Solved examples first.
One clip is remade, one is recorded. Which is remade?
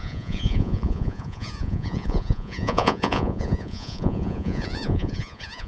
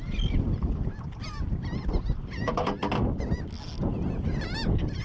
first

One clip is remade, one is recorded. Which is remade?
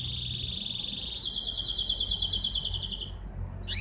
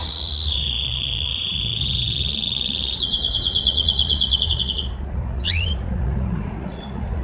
second